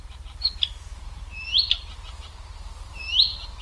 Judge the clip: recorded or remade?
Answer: recorded